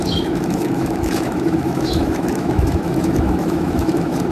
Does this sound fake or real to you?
fake